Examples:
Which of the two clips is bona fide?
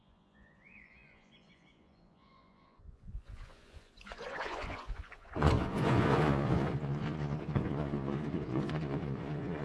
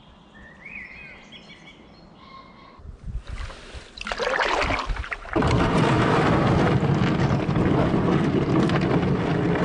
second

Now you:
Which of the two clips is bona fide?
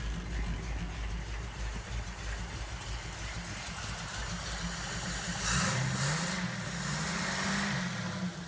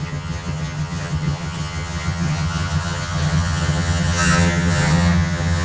first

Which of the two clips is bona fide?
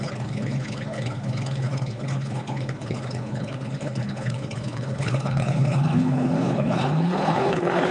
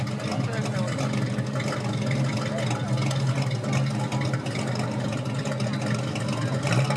second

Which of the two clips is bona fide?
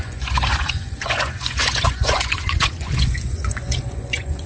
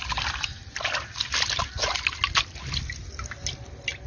second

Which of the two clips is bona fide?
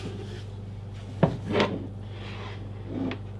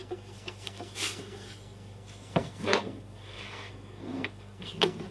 first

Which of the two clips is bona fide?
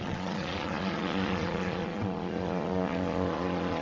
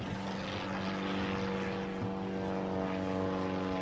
second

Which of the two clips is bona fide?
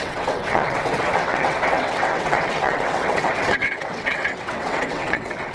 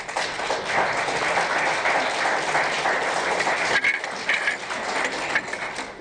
second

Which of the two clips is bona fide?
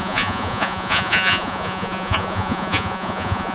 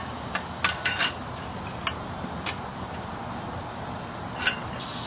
second